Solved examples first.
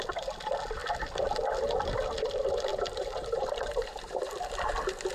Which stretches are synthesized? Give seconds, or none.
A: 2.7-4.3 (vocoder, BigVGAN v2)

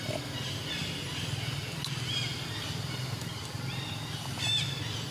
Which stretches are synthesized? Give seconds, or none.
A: none

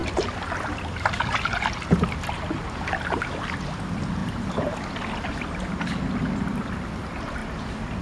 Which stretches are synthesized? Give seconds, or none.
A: none

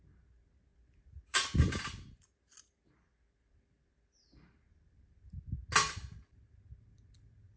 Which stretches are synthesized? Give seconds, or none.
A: none